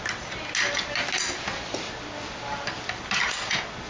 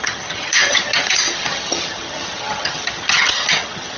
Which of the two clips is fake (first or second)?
second